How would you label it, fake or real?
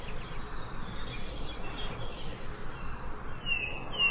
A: real